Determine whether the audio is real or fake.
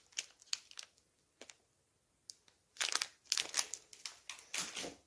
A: real